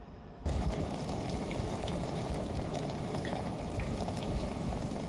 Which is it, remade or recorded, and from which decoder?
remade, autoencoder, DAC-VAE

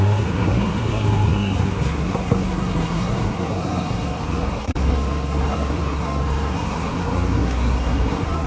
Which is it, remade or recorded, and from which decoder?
remade, codec, SNAC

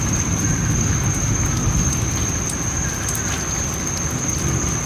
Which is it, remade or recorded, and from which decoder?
recorded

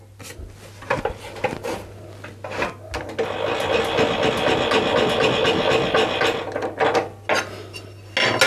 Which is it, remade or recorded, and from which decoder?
recorded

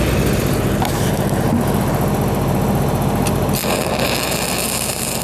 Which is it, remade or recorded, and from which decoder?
recorded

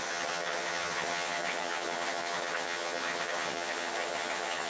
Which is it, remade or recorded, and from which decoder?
remade, vocoder, HiFi-GAN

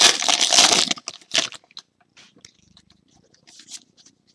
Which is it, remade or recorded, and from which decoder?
recorded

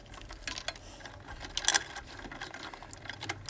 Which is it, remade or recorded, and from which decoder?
recorded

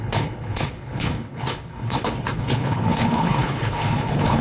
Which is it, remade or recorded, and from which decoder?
remade, codec, HILCodec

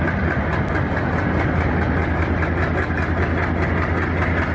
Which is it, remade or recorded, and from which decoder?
recorded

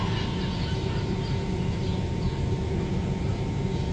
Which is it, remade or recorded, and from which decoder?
recorded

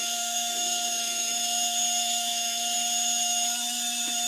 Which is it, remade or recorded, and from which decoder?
remade, autoencoder, DAC-VAE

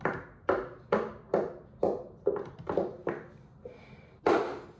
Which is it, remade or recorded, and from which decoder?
recorded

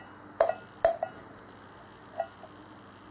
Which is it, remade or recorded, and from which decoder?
recorded